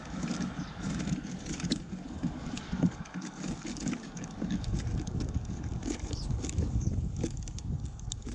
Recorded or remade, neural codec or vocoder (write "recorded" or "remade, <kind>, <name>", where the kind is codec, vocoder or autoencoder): remade, codec, DAC